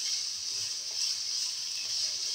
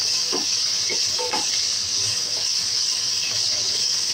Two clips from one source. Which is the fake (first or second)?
second